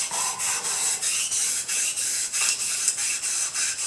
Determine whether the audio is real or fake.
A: real